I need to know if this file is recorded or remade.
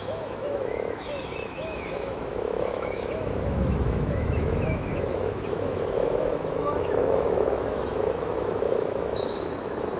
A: remade